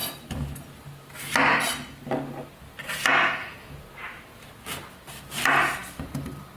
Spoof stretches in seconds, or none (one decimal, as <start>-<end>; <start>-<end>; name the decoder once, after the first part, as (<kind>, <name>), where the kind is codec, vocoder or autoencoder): 5.8-6.6 (vocoder, BigVGAN v2)